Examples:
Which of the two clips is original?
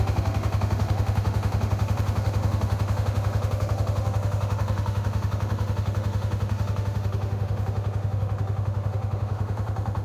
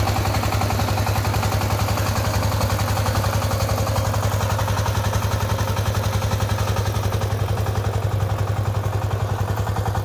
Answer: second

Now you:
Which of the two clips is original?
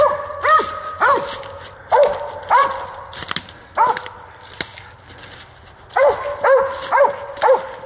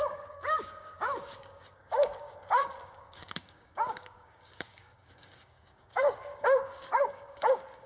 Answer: first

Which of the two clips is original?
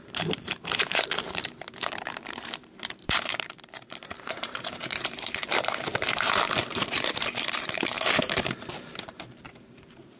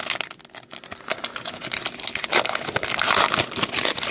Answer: second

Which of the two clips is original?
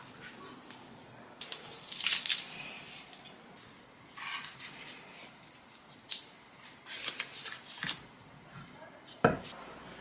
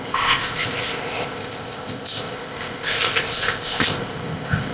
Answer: first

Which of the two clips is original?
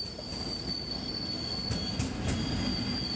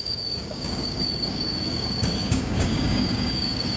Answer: first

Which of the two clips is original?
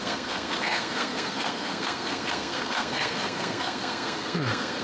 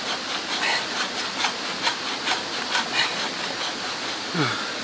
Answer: second